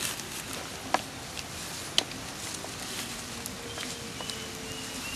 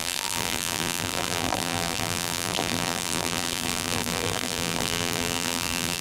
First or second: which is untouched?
first